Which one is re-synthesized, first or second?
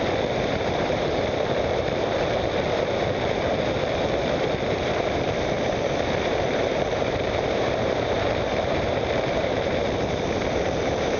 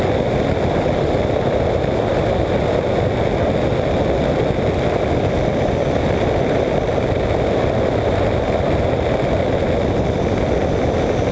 first